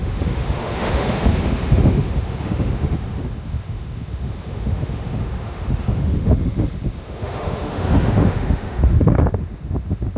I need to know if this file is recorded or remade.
remade